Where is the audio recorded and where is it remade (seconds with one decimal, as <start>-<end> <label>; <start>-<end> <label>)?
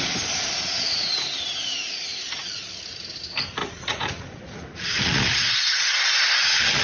0.0-3.6 recorded; 3.6-5.9 remade; 5.9-6.8 recorded